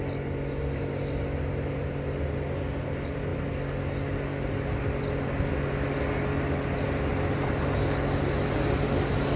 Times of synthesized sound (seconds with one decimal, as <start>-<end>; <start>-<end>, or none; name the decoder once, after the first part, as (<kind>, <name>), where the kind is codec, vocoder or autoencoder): none